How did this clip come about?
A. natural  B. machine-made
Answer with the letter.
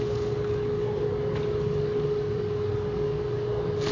B